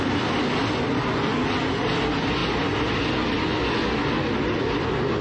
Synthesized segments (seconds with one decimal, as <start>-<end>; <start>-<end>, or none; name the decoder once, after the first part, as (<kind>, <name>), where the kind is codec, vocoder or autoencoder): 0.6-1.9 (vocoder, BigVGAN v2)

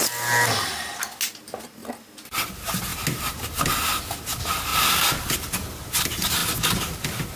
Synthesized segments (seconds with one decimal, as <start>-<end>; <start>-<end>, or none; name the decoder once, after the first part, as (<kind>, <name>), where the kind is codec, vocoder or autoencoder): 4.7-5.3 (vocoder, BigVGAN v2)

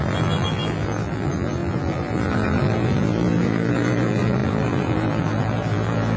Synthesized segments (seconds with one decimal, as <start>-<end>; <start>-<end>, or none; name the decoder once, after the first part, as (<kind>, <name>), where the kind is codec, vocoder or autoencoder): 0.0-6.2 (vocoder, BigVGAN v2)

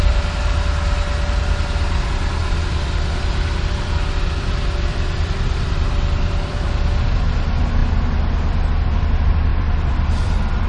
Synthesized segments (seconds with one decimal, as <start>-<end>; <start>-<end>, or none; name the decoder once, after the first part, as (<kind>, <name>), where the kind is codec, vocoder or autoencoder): 2.4-7.0 (vocoder, BigVGAN v2); 9.5-10.7

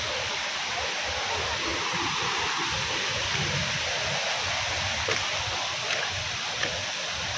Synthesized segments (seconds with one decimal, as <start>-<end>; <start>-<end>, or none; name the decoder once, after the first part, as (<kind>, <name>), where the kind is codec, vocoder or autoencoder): 0.0-1.7 (vocoder, BigVGAN v2); 6.1-7.4